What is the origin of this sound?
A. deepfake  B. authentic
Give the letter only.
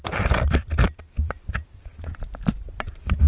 A